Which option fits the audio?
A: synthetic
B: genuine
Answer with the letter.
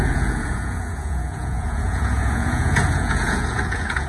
A